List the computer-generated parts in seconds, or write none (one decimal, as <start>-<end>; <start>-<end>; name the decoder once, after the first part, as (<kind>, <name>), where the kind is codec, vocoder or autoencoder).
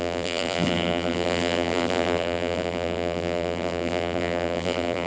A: 0.0-5.1 (vocoder, BigVGAN v2)